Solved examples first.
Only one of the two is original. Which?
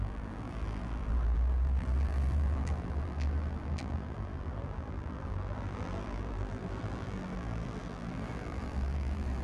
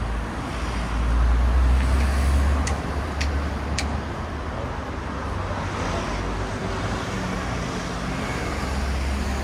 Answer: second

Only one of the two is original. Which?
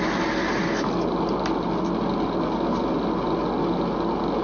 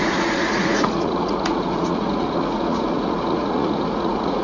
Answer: first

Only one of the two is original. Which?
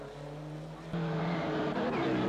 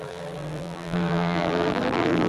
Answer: first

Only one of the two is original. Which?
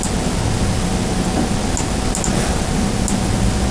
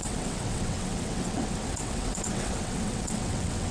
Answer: first